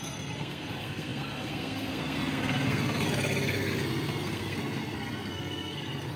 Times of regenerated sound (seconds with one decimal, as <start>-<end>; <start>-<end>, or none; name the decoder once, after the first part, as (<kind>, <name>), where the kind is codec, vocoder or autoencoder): 0.0-6.2 (codec, SNAC)